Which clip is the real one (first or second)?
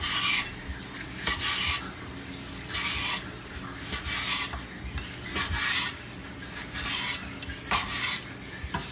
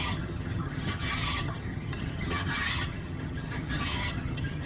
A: first